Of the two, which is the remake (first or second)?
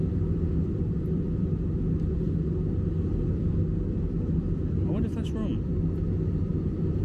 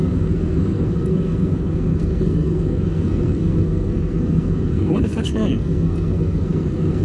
second